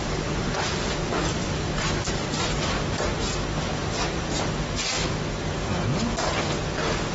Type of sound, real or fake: real